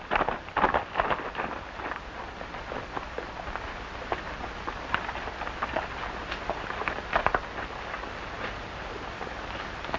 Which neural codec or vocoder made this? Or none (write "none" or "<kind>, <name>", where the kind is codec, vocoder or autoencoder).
none